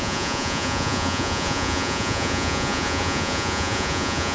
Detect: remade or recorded remade